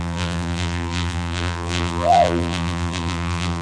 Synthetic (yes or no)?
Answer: yes